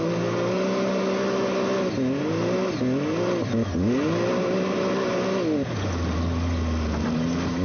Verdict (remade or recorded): recorded